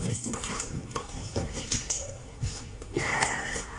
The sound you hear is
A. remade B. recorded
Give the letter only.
A